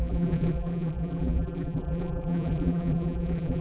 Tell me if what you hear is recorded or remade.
remade